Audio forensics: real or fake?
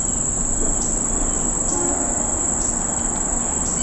real